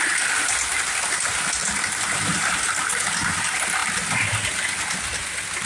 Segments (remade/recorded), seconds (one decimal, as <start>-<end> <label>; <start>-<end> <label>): 0.0-1.6 recorded; 1.6-2.5 remade; 2.5-5.7 recorded